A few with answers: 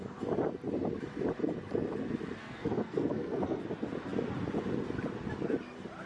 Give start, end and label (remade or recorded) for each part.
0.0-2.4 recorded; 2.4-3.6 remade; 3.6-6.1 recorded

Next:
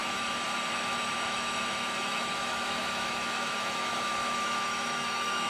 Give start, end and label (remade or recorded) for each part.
0.0-5.5 remade